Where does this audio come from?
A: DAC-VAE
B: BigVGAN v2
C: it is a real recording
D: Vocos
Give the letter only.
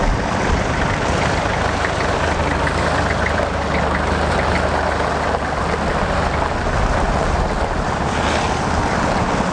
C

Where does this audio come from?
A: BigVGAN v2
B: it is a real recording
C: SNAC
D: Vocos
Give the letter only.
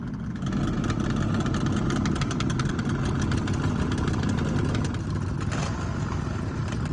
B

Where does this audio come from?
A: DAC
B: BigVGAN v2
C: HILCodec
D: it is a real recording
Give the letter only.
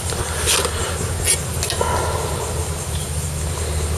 D